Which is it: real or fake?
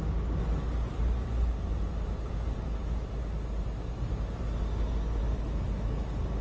real